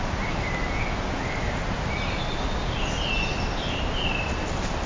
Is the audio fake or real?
real